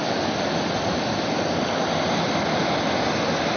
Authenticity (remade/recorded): recorded